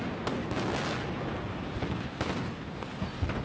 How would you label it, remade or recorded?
recorded